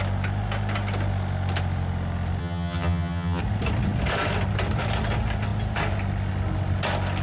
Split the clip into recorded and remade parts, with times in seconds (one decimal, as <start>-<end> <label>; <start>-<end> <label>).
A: 0.0-2.4 recorded; 2.4-3.4 remade; 3.4-7.2 recorded